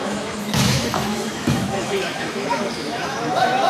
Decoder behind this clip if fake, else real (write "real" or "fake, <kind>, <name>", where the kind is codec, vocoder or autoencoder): fake, autoencoder, DAC-VAE